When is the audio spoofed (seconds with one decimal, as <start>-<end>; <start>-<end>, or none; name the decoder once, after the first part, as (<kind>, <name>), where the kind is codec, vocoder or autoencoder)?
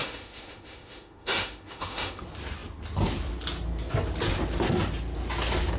0.0-2.2 (autoencoder, DAC-VAE)